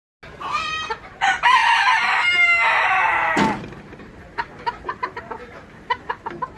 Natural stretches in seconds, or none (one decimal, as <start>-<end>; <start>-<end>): 0.0-0.7; 1.6-2.3